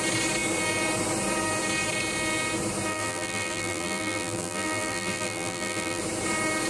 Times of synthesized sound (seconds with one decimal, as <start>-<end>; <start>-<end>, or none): 2.9-6.0